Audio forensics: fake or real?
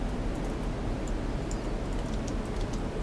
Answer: real